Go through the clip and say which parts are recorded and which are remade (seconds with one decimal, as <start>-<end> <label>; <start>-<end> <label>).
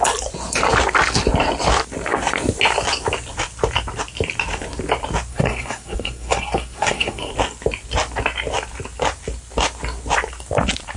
0.0-5.3 recorded; 5.3-7.3 remade; 7.3-11.0 recorded